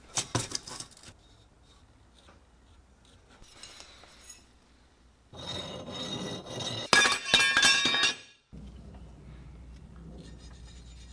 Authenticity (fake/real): real